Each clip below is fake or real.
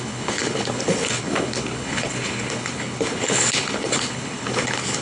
fake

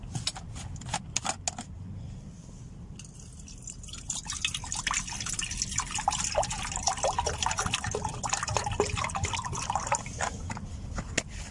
real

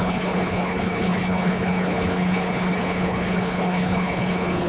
fake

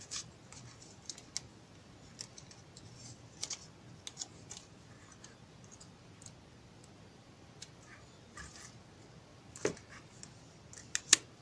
real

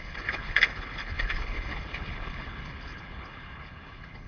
fake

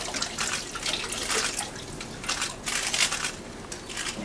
real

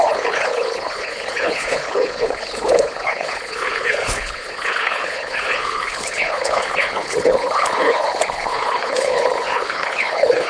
fake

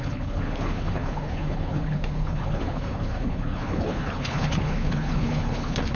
fake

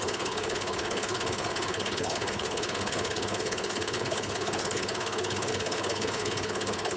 fake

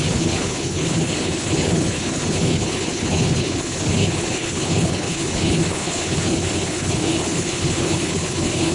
fake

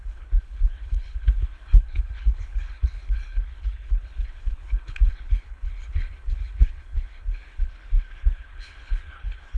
fake